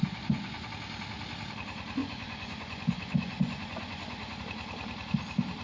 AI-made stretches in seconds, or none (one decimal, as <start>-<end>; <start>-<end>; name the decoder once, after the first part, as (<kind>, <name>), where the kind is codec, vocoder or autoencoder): 0.0-0.7 (vocoder, Vocos); 2.0-4.4